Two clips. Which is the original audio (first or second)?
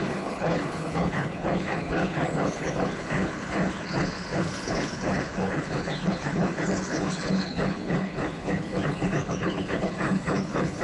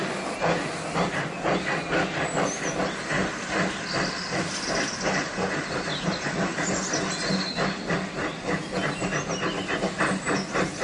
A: second